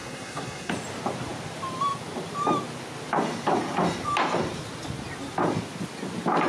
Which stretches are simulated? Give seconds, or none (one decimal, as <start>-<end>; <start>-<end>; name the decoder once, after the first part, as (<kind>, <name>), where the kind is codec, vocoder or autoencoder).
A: 0.0-0.7 (codec, SNAC)